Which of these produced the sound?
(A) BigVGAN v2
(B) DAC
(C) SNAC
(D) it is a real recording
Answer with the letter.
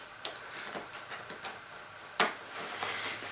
D